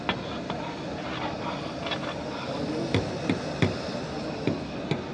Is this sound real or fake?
real